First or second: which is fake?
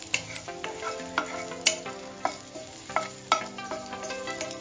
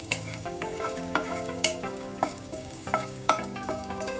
second